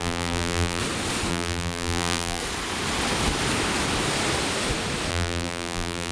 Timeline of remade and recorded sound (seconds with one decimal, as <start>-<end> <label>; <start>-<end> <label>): 0.0-0.8 remade; 0.8-1.3 recorded; 1.3-2.4 remade; 2.4-5.1 recorded; 5.1-6.1 remade